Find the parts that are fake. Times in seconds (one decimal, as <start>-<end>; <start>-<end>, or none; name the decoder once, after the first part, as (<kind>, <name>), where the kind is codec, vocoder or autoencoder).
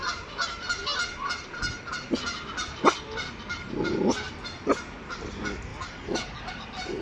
5.7-6.5 (vocoder, BigVGAN v2)